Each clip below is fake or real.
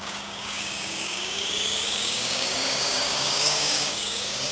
fake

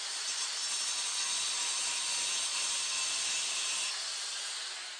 real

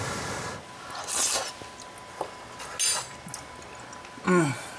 real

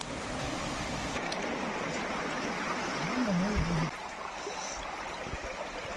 real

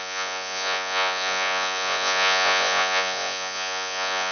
fake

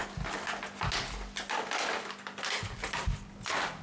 real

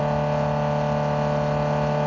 real